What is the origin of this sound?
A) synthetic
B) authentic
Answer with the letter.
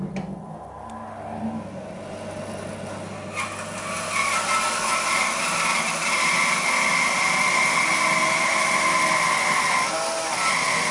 B